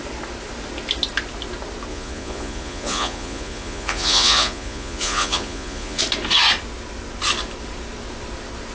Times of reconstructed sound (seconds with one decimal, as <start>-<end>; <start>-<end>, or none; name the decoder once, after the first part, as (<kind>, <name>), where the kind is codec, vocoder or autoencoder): 1.9-6.0 (vocoder, Vocos)